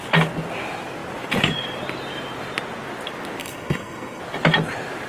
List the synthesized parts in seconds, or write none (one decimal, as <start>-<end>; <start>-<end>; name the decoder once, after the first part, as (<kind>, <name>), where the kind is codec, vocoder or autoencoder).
3.4-4.2 (codec, SNAC)